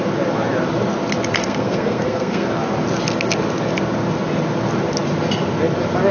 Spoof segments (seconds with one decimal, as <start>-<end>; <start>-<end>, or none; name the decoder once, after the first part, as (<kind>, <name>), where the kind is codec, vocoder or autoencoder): 1.4-2.5 (codec, SNAC)